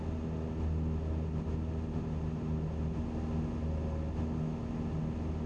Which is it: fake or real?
real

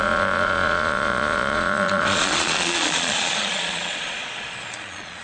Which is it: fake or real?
fake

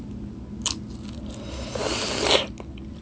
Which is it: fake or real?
real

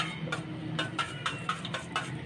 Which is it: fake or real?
real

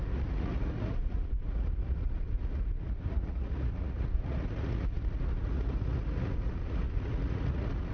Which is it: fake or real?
fake